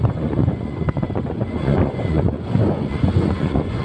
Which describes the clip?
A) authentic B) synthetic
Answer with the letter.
B